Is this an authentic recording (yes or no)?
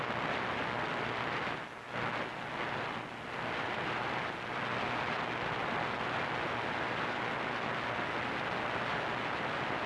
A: yes